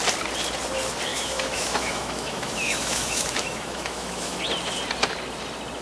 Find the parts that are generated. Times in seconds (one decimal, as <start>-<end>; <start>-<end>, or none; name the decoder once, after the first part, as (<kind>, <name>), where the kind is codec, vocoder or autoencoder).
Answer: 1.1-4.4 (autoencoder, DAC-VAE)